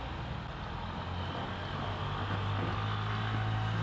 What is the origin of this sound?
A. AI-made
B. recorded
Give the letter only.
B